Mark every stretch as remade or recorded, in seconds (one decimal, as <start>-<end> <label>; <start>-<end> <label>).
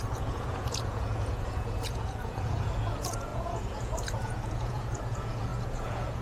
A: 0.0-6.2 remade